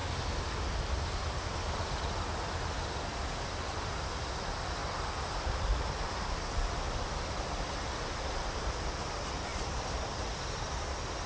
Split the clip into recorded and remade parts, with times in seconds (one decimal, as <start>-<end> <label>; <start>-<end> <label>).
0.0-11.3 recorded